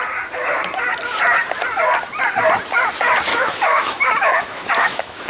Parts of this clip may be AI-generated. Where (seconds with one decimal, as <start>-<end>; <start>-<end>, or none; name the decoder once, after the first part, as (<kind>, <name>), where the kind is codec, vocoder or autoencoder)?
3.3-5.3 (autoencoder, DAC-VAE)